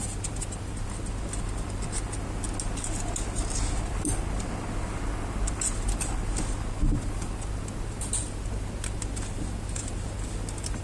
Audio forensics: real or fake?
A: real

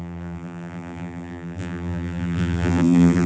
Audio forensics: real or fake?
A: fake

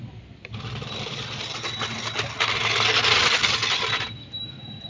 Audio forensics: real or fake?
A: real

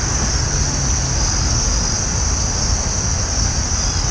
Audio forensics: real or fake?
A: real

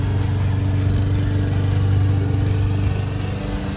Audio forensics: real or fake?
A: real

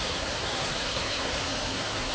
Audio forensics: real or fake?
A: fake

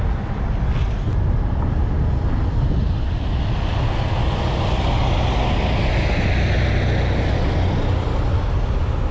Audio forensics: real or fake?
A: real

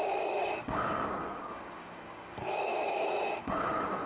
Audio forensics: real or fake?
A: fake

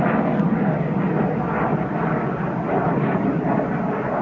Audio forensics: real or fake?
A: real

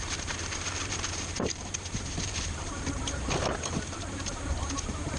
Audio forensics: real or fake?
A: fake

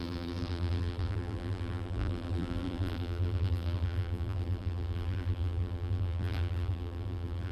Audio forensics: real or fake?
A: fake